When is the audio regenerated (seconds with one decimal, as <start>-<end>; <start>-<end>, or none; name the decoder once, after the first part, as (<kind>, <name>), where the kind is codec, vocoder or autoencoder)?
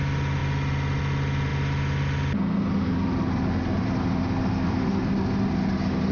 none